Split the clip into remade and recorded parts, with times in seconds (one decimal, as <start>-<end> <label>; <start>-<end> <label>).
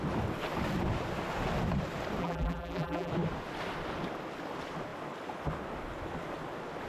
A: 0.0-2.2 recorded; 2.2-3.1 remade; 3.1-6.9 recorded